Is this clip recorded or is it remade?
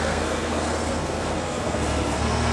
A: remade